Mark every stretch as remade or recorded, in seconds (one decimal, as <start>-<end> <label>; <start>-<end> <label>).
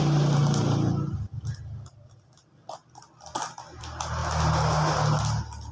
0.0-5.7 recorded